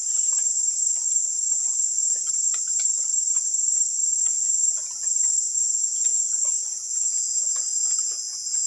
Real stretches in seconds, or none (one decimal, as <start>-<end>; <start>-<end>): 0.0-5.5